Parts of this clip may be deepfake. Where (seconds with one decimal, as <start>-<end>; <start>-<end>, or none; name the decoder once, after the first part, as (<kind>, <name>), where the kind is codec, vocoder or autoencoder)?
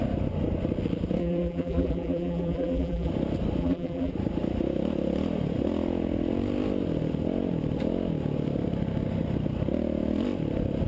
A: 1.2-3.1 (vocoder, BigVGAN v2); 3.6-4.1